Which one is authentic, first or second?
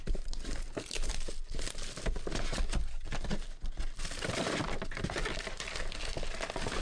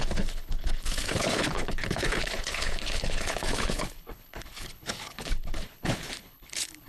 first